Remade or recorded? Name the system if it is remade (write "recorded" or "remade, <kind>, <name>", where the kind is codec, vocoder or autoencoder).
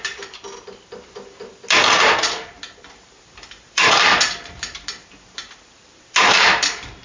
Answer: remade, vocoder, BigVGAN v2